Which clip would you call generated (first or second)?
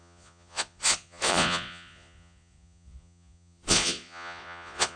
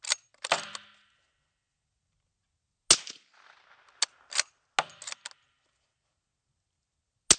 first